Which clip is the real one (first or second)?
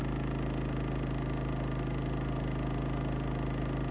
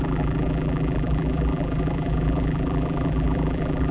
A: first